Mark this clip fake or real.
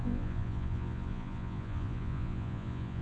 fake